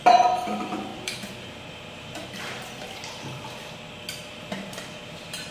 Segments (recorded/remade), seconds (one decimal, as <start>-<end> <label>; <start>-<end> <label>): 0.0-2.2 remade; 2.2-4.2 recorded; 4.2-5.5 remade